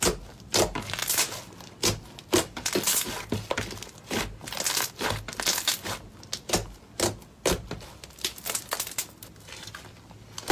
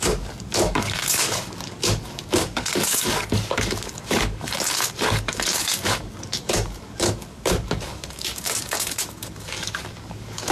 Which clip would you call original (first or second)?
first